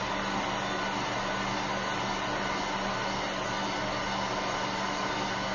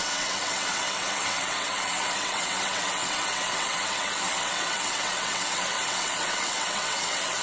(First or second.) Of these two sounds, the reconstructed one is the second